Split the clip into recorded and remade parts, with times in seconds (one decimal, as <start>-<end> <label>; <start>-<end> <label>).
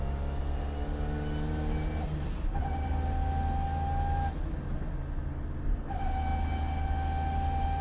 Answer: 0.0-7.8 recorded